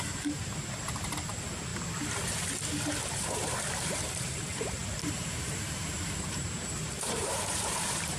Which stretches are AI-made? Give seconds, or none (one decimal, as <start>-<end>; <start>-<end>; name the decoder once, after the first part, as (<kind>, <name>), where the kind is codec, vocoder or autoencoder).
0.0-1.7 (vocoder, BigVGAN v2); 3.0-8.2